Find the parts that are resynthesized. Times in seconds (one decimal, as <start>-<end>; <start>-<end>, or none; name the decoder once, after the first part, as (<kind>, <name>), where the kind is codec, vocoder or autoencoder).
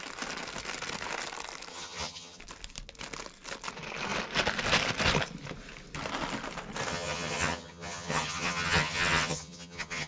1.7-2.4 (vocoder, HiFi-GAN); 6.9-10.1